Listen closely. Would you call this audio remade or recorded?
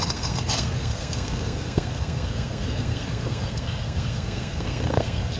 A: remade